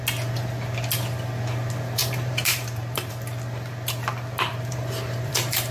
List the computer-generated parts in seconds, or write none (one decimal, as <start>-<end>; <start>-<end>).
2.0-3.1; 4.5-5.7